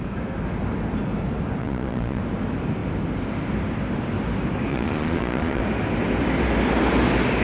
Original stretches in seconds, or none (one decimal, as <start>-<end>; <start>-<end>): 0.0-1.6; 2.2-4.7; 5.6-7.4